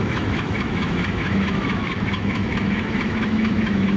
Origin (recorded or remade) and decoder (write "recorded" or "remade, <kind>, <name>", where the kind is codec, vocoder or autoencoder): remade, autoencoder, DAC-VAE